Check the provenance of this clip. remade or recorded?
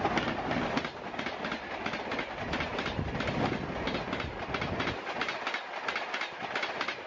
recorded